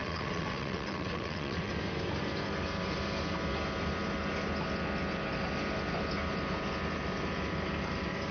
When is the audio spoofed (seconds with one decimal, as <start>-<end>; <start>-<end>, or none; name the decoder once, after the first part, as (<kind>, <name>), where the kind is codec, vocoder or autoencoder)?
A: 0.0-1.7 (vocoder, WaveNeXt)